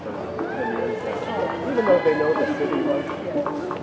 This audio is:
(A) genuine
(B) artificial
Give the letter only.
A